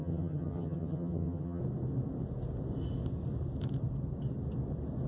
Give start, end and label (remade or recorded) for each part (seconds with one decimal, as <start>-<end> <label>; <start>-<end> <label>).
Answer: 0.0-1.6 remade; 1.6-5.1 recorded